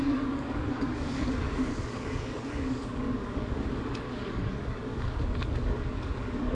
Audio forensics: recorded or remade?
remade